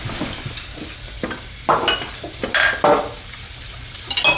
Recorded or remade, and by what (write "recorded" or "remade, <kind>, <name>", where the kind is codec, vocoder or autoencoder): recorded